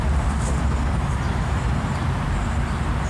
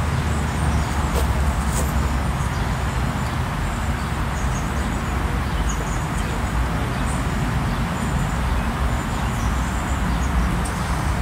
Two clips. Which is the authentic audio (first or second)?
second